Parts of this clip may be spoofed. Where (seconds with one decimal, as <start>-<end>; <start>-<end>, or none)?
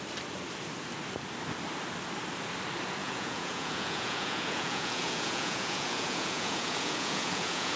3.0-7.8